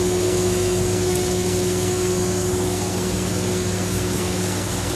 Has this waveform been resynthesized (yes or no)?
yes